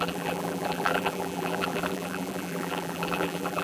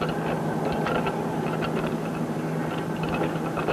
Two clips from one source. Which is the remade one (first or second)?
first